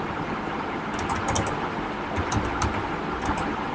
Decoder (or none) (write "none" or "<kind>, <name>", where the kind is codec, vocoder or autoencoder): none